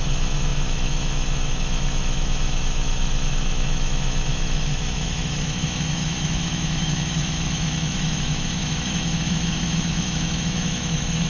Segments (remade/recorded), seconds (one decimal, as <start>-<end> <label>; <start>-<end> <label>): 0.0-11.3 remade